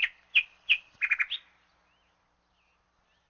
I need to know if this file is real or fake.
real